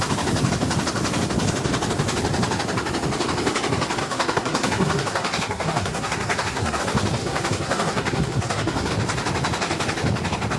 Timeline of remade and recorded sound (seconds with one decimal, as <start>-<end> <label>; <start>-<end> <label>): 0.0-4.0 recorded; 4.0-6.8 remade; 6.8-7.2 recorded; 7.2-8.9 remade; 8.9-10.6 recorded